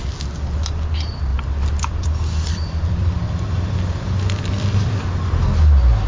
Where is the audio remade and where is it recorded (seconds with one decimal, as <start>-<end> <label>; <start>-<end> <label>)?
0.0-1.3 recorded; 1.3-5.0 remade; 5.0-6.1 recorded